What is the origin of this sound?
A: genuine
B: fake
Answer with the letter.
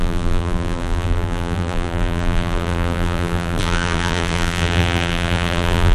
B